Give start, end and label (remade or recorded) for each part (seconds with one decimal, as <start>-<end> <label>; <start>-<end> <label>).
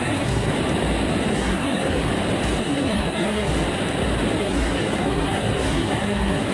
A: 0.0-0.5 remade; 0.5-1.3 recorded; 1.3-2.1 remade; 2.1-2.6 recorded; 2.6-3.5 remade; 3.5-4.4 recorded; 4.4-6.5 remade